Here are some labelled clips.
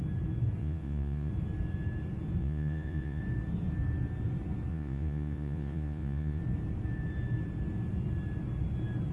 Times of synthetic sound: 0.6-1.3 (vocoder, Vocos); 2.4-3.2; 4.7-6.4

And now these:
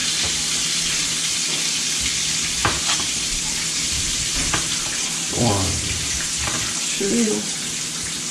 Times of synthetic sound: 0.0-8.3 (vocoder, BigVGAN v2)

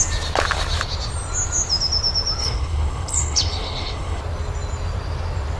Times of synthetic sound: 2.4-4.2 (codec, HILCodec)

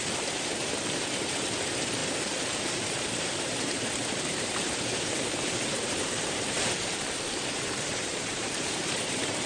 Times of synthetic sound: 0.0-9.5 (vocoder, BigVGAN v2)

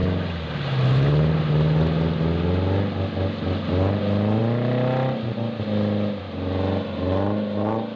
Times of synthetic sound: none

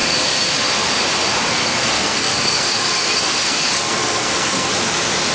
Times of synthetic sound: 1.5-4.7 (codec, SNAC)

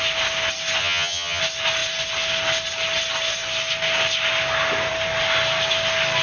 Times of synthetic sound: 0.8-1.4 (vocoder, HiFi-GAN)